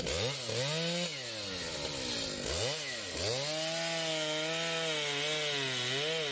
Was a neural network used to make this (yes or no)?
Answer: no